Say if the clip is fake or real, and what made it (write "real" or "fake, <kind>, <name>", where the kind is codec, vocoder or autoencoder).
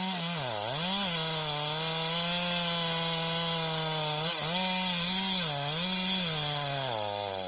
real